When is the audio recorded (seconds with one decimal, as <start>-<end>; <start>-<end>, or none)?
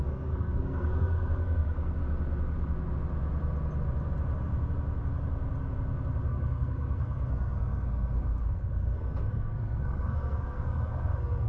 2.0-6.3